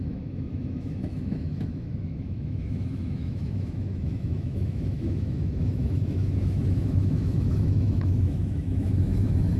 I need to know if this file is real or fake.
fake